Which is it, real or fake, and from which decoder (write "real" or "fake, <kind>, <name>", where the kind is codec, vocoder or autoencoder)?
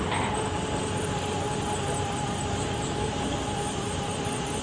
real